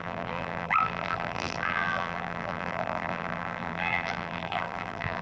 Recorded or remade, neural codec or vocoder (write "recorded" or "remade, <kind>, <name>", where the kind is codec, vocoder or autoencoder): remade, vocoder, BigVGAN v2